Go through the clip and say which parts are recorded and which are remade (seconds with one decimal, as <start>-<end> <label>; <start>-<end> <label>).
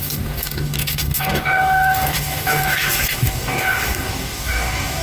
0.0-5.0 remade